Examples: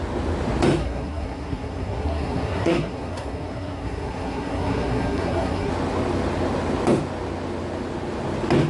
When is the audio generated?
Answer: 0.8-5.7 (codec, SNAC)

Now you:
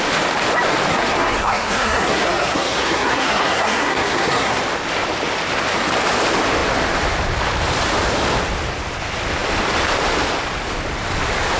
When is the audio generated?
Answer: 0.9-4.6 (codec, SNAC)